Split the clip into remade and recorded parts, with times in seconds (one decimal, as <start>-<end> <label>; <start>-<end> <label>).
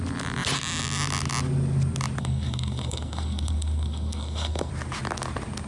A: 0.0-2.2 recorded; 2.2-4.7 remade; 4.7-5.7 recorded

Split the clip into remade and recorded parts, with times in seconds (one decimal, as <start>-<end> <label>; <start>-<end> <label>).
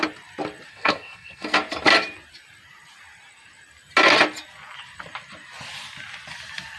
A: 0.0-0.7 recorded; 0.7-1.6 remade; 1.6-6.8 recorded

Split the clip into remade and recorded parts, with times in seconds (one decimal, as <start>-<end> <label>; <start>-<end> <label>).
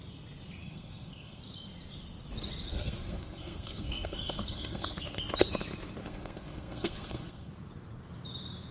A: 0.0-0.6 recorded; 0.6-1.4 remade; 1.4-2.7 recorded; 2.7-5.2 remade; 5.2-6.0 recorded; 6.0-7.5 remade; 7.5-8.7 recorded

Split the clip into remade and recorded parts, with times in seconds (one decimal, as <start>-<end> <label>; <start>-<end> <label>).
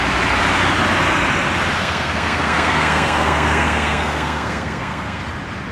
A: 0.0-1.8 recorded; 1.8-5.2 remade; 5.2-5.7 recorded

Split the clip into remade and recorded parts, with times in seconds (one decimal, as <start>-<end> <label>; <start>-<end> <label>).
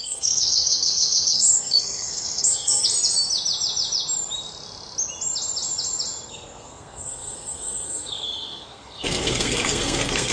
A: 0.0-2.8 remade; 2.8-6.3 recorded; 6.3-10.3 remade